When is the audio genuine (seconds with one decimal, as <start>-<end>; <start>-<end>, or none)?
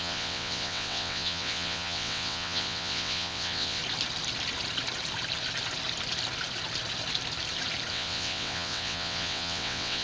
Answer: 3.8-7.9